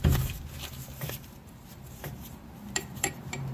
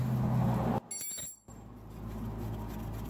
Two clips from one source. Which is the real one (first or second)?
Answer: second